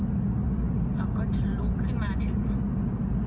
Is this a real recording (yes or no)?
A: yes